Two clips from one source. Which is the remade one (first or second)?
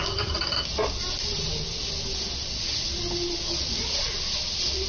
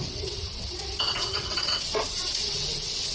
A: second